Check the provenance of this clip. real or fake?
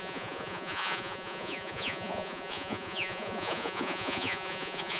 fake